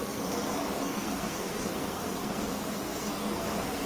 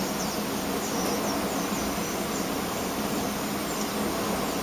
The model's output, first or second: first